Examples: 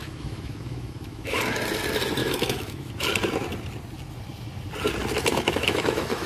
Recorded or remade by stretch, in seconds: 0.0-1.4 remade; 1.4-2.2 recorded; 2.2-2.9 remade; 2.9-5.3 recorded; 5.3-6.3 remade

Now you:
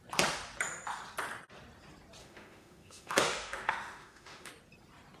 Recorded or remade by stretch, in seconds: 0.0-2.2 recorded; 2.2-4.5 remade; 4.5-5.2 recorded

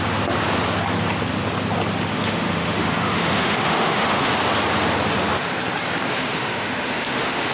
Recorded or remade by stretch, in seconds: 0.0-2.1 recorded; 2.1-4.3 remade; 4.3-6.1 recorded; 6.1-7.5 remade

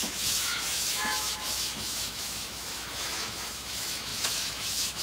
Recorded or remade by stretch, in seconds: 0.0-5.0 remade

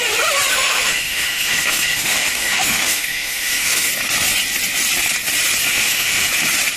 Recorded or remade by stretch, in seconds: 0.0-0.5 recorded; 0.5-3.9 remade; 3.9-5.7 recorded; 5.7-6.3 remade; 6.3-6.8 recorded

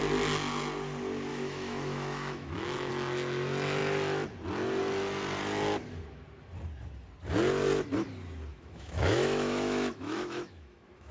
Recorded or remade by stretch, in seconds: 0.0-1.3 recorded; 1.3-2.9 remade; 2.9-8.5 recorded; 8.5-11.1 remade

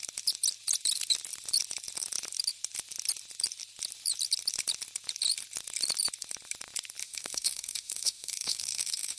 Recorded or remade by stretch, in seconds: 0.0-7.0 recorded; 7.0-9.2 remade